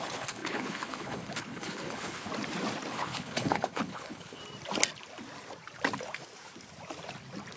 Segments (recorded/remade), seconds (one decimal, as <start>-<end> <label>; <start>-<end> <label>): 0.0-2.3 remade; 2.3-2.9 recorded; 2.9-4.4 remade; 4.4-7.6 recorded